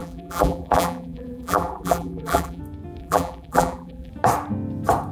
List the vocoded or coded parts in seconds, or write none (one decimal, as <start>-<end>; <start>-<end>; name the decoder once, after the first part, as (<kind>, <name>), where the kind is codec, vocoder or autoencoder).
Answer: 0.0-2.6 (vocoder, BigVGAN v2); 3.0-4.1